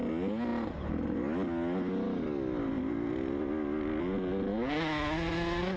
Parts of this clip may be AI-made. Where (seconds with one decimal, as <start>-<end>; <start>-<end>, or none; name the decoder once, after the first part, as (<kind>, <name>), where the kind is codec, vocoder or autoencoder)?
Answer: none